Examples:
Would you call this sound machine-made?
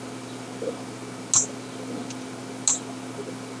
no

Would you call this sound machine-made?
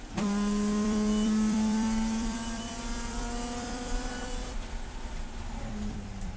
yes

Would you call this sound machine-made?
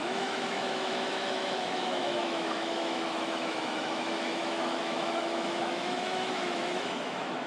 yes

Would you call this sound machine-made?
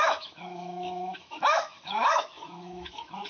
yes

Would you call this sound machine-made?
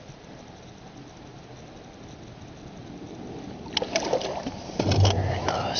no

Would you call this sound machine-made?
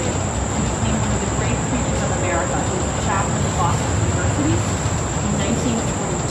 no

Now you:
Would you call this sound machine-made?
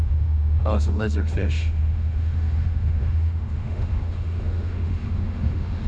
yes